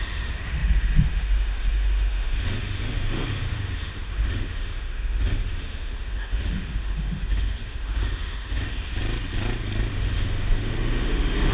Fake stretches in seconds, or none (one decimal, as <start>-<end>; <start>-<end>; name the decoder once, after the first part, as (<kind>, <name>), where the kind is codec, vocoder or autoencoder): 0.0-8.9 (autoencoder, DAC-VAE); 9.9-11.5